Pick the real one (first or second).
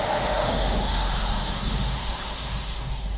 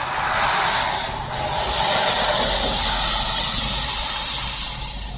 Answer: second